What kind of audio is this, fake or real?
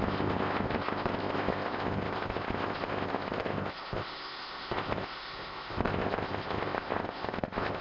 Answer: fake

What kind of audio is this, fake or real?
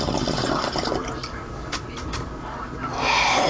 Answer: real